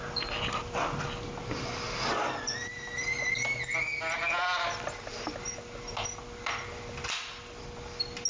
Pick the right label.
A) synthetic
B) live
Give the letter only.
B